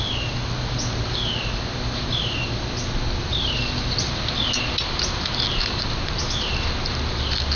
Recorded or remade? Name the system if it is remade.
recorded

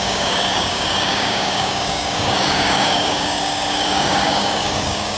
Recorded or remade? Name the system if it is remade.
remade, codec, DAC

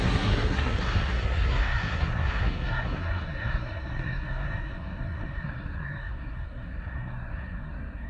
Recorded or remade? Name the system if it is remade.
remade, codec, SNAC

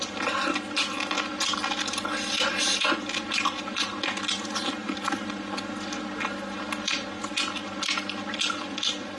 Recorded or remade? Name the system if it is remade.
recorded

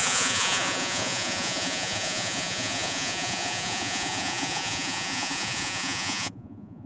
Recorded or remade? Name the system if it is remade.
remade, vocoder, Vocos